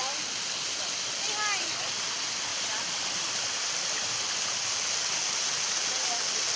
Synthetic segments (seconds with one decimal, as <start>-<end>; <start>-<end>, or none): 2.5-3.7